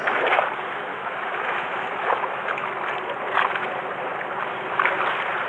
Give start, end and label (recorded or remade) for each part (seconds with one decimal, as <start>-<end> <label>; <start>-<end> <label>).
0.0-0.9 recorded; 0.9-2.7 remade; 2.7-5.5 recorded